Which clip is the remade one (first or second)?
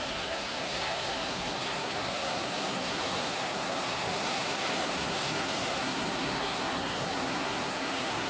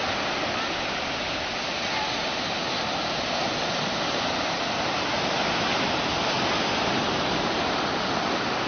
first